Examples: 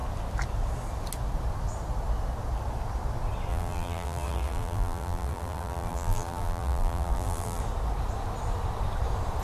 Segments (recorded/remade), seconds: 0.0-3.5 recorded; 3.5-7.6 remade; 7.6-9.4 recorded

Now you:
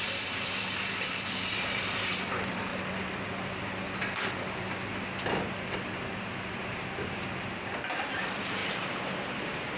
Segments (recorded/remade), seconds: 0.0-2.7 remade; 2.7-6.6 recorded; 6.6-9.8 remade

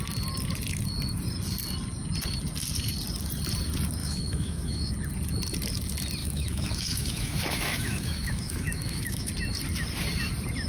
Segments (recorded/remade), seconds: 0.0-4.0 recorded; 4.0-4.9 remade; 4.9-6.2 recorded; 6.2-9.3 remade; 9.3-10.7 recorded

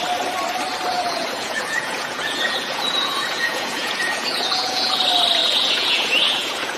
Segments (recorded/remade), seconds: 0.0-0.9 recorded; 0.9-5.0 remade; 5.0-5.4 recorded; 5.4-6.8 remade

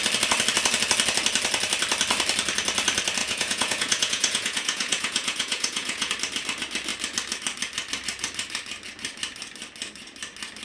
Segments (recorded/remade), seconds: 0.0-3.2 recorded; 3.2-6.1 remade; 6.1-10.6 recorded